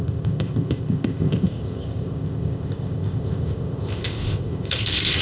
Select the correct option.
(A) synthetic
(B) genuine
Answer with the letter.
A